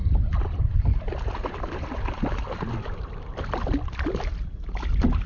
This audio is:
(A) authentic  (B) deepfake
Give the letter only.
A